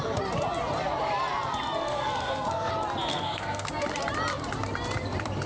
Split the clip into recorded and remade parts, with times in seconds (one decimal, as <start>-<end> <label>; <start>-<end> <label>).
0.0-1.8 recorded; 1.8-2.7 remade; 2.7-3.1 recorded; 3.1-3.7 remade; 3.7-5.5 recorded